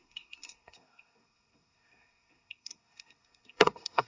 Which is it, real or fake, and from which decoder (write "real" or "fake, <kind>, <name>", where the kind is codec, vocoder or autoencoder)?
fake, codec, SNAC